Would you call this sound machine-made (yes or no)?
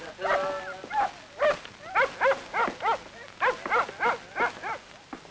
no